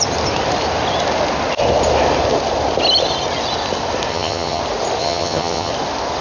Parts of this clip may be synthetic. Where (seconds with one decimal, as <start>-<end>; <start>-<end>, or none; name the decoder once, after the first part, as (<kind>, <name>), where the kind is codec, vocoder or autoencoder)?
4.1-4.6 (vocoder, HiFi-GAN); 5.0-5.7